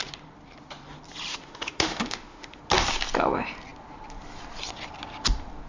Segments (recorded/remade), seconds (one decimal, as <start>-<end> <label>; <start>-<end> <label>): 0.0-1.3 recorded; 1.3-2.6 remade; 2.6-5.7 recorded